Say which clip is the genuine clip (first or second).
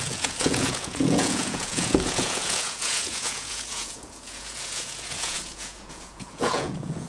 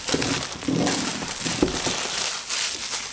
second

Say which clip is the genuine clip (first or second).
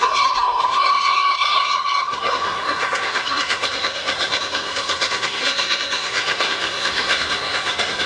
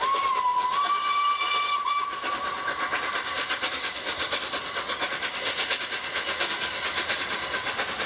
second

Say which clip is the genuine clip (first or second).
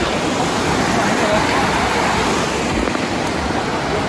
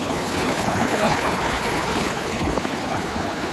first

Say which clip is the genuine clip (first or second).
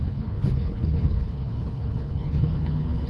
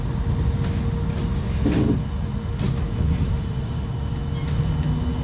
second